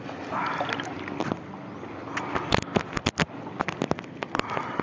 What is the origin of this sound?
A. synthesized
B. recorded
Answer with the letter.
B